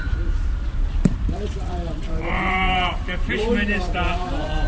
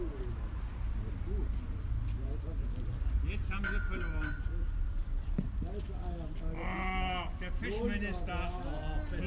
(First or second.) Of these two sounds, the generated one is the first